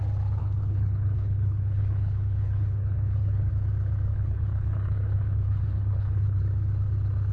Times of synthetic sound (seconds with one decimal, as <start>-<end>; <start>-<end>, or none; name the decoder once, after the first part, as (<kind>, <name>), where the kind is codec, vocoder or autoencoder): 0.4-3.5 (codec, HILCodec); 4.1-6.4